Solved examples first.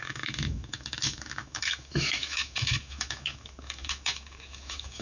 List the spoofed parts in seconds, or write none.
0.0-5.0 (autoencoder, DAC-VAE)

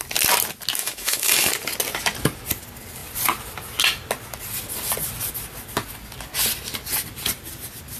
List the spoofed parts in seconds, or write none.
0.8-1.5 (autoencoder, DAC-VAE)